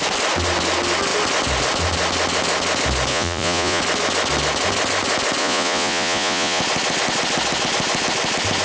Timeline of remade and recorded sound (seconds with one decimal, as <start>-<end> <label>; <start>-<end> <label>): 0.0-3.1 recorded; 3.1-3.8 remade; 3.8-5.4 recorded; 5.4-6.6 remade; 6.6-8.6 recorded

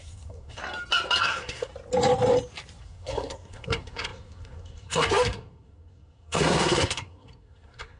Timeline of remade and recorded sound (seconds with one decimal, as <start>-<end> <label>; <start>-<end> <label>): 0.0-0.6 remade; 0.6-1.2 recorded; 1.2-1.7 remade; 1.7-2.8 recorded; 2.8-8.0 remade

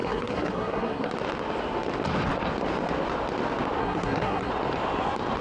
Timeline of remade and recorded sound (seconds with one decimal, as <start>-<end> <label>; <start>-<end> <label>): 0.0-1.1 remade; 1.1-3.8 recorded; 3.8-4.5 remade; 4.5-5.4 recorded

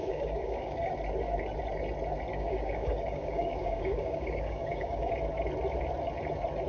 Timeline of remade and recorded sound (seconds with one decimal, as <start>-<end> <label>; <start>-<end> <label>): 0.0-0.9 remade; 0.9-2.3 recorded; 2.3-5.1 remade; 5.1-6.7 recorded

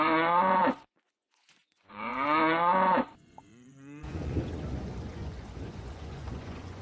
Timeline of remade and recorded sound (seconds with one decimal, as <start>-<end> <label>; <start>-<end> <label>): 0.0-6.8 remade

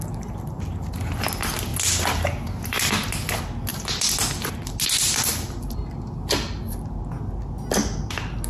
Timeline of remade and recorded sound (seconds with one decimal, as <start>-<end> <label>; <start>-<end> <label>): 0.0-8.5 recorded

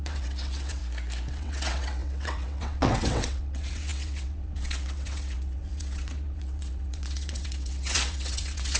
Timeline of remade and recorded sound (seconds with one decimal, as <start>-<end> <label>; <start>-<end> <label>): 0.0-0.8 remade; 0.8-1.3 recorded; 1.3-8.8 remade

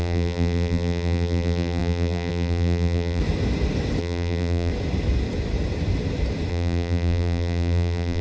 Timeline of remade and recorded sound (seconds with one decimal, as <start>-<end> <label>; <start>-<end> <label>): 0.0-3.2 remade; 3.2-4.0 recorded; 4.0-4.7 remade; 4.7-6.5 recorded; 6.5-8.2 remade